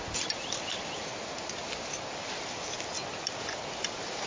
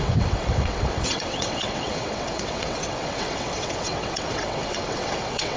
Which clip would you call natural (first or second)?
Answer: first